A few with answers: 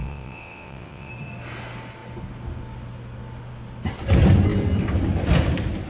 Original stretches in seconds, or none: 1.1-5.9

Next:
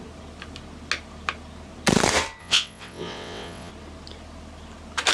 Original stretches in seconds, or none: 0.0-2.4; 3.7-5.1

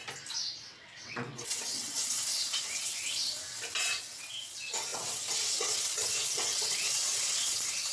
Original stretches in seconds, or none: 0.0-0.6; 3.4-4.0

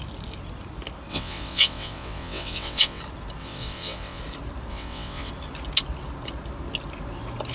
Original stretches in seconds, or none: 0.0-1.1; 3.0-3.4; 4.2-4.7; 5.3-7.5

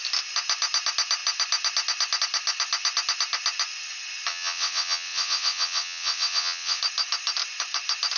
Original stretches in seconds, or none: 0.0-4.3; 6.8-8.2

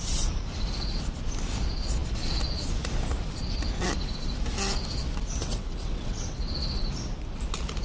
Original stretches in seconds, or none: 0.0-5.4; 6.4-7.8

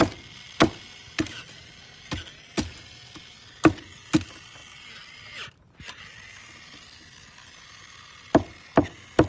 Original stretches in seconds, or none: 0.0-9.3